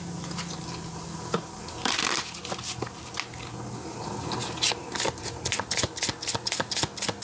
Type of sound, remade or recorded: recorded